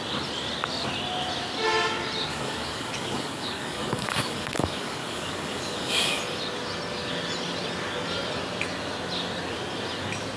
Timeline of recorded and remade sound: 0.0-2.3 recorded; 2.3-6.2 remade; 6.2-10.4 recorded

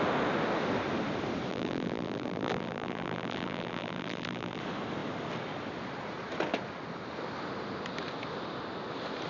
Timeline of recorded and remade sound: 0.0-1.5 recorded; 1.5-4.6 remade; 4.6-9.3 recorded